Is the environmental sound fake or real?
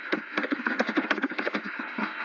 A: fake